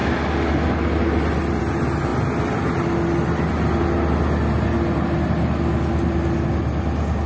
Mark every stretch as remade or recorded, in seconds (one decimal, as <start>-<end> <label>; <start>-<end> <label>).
0.0-7.3 recorded